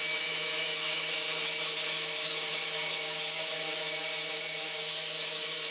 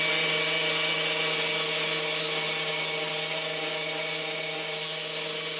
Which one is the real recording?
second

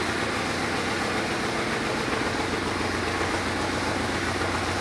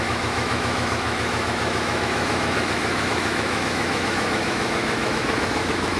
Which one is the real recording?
first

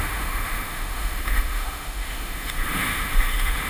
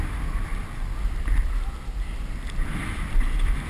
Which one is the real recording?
second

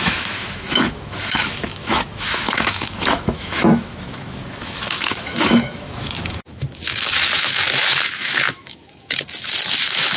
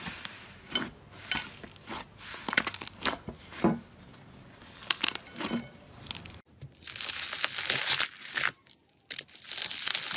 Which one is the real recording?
second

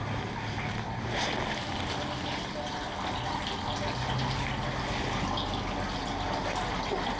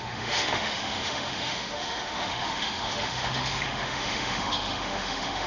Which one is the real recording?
first